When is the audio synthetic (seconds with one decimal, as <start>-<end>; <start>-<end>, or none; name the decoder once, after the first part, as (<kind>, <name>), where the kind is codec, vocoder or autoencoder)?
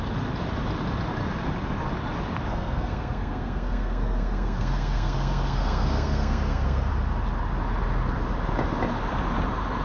2.5-6.9 (codec, SNAC)